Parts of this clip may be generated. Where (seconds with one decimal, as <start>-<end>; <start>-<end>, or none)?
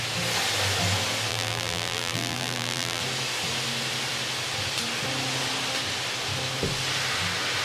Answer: 1.3-3.0